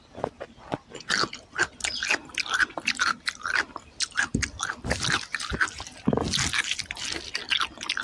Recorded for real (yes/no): yes